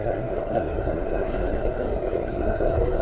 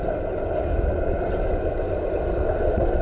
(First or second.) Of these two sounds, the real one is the second